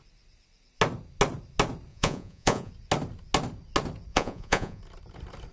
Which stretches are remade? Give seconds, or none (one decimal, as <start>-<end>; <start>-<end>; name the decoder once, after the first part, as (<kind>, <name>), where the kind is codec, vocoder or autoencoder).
1.9-2.7 (vocoder, Vocos); 4.1-4.8